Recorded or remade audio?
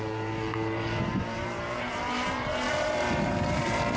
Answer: remade